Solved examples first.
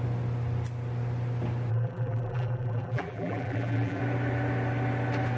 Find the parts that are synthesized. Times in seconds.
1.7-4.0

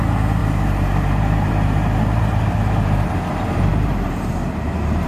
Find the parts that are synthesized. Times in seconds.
0.4-3.1